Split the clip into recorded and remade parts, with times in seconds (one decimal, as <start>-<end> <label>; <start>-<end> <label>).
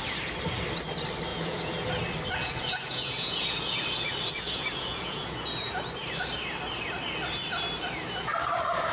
0.0-1.3 recorded; 1.3-1.9 remade; 1.9-2.4 recorded; 2.4-5.8 remade; 5.8-8.9 recorded